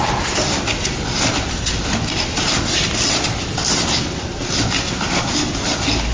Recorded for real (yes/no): yes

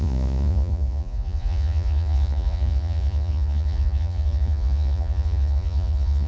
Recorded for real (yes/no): no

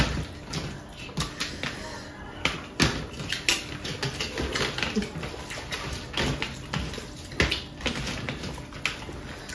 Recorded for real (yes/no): yes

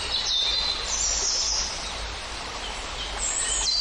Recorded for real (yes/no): yes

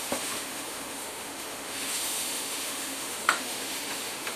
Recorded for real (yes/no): no